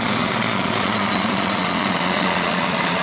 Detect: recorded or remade remade